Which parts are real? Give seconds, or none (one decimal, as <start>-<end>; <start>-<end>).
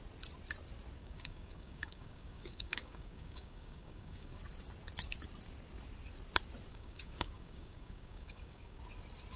0.0-1.0; 4.4-6.7; 8.8-9.4